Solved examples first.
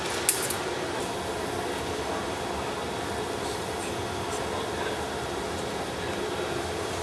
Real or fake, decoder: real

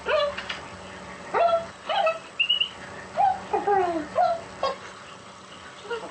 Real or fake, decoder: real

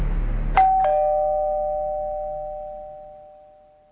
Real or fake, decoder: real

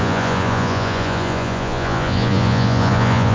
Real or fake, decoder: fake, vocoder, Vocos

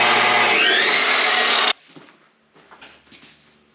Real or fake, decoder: real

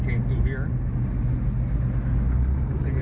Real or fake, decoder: real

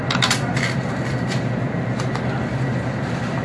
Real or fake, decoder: real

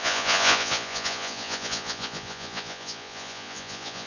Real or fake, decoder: fake, vocoder, Vocos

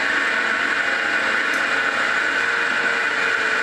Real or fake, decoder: real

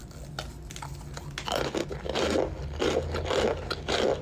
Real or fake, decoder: real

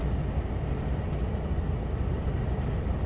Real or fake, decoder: real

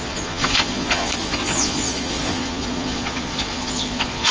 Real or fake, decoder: fake, vocoder, Vocos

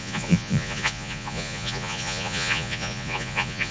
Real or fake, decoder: fake, vocoder, Vocos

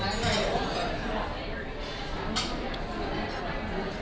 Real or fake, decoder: real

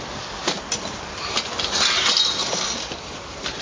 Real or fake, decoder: real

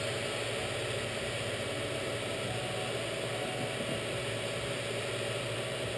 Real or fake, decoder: real